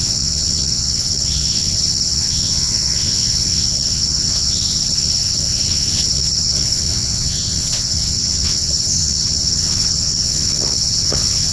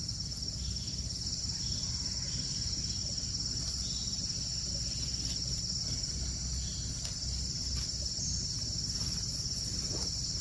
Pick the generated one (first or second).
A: first